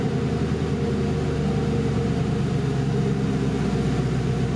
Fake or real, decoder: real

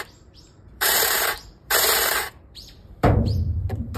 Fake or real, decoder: fake, vocoder, BigVGAN v2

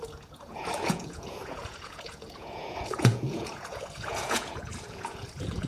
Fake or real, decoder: fake, vocoder, Vocos